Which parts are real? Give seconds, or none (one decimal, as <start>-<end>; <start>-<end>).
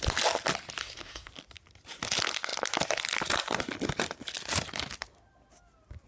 0.0-0.8; 1.3-6.1